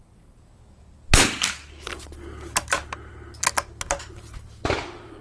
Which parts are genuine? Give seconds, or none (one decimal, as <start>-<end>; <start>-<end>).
0.0-5.2